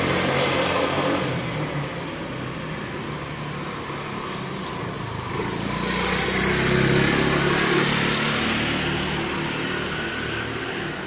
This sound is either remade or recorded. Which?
recorded